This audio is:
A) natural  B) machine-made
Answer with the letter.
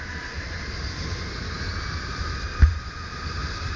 A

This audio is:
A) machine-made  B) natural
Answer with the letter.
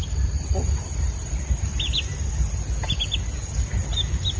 B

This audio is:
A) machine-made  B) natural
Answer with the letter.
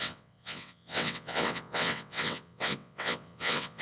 A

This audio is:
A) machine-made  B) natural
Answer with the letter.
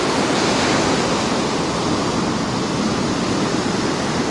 B